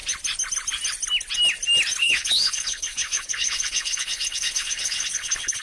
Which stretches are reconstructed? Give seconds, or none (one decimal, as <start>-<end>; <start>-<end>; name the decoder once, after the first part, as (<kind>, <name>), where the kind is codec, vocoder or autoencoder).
2.0-5.6 (codec, HILCodec)